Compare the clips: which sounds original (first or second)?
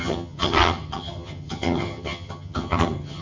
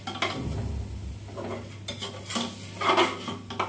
second